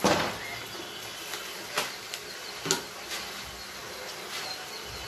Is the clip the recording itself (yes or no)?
yes